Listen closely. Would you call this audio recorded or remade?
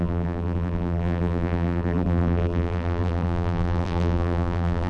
remade